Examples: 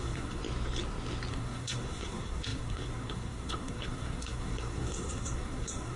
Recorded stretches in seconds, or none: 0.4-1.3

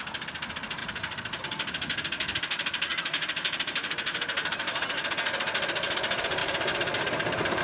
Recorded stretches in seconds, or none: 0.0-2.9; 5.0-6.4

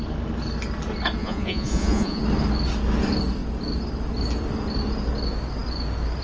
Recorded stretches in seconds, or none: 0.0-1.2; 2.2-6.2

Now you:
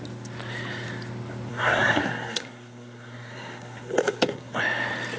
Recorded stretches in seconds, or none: 0.0-1.5; 4.6-5.2

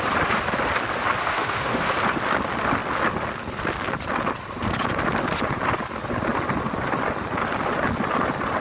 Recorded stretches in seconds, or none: 0.0-1.2; 1.9-8.6